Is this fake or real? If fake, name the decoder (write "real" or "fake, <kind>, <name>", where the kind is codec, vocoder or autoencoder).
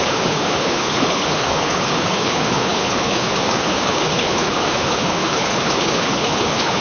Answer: fake, codec, HILCodec